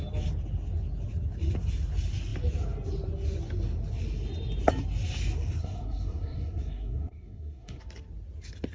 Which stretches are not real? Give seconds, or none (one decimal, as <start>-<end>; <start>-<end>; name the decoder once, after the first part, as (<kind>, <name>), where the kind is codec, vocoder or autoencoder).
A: 5.6-7.8 (codec, SNAC)